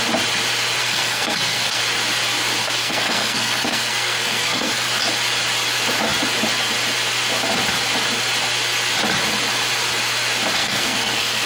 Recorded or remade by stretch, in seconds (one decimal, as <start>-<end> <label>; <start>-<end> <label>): 0.0-0.8 recorded; 0.8-1.8 remade; 1.8-2.6 recorded; 2.6-4.9 remade; 4.9-10.6 recorded; 10.6-11.5 remade